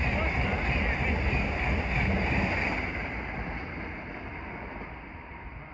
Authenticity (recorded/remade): recorded